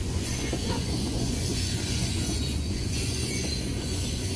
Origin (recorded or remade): remade